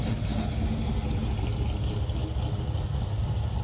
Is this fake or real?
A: real